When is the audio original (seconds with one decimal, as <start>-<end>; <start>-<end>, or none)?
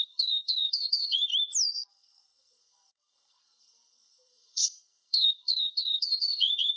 1.3-1.9